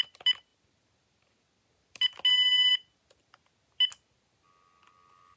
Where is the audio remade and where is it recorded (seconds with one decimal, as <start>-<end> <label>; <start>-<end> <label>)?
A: 0.0-5.4 recorded